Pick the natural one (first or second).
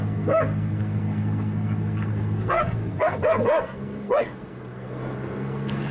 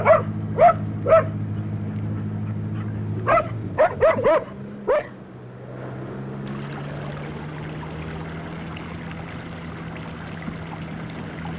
second